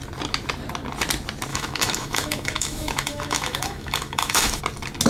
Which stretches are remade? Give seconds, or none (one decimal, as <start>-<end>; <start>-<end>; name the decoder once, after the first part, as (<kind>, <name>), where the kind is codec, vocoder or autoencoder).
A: 1.5-4.6 (autoencoder, DAC-VAE)